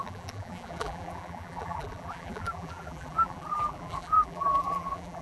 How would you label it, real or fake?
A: fake